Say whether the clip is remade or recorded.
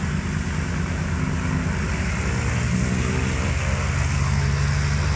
recorded